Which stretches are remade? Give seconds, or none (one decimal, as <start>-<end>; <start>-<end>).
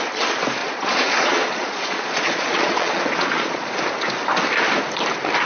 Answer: 0.6-3.8